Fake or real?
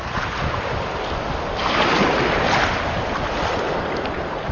real